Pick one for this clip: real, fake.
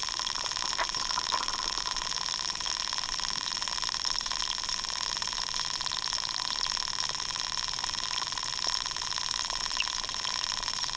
real